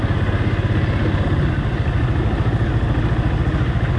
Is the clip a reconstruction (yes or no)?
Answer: no